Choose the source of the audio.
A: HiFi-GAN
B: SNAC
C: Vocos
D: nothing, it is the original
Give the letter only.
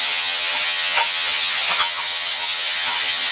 A